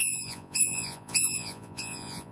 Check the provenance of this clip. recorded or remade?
remade